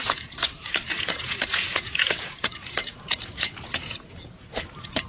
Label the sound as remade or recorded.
remade